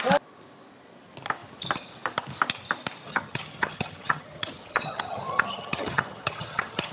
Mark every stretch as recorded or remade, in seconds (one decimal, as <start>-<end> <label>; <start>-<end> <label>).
0.0-3.1 recorded; 3.1-6.9 remade